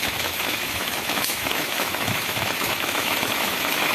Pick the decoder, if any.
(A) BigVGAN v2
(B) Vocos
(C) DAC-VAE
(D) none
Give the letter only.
C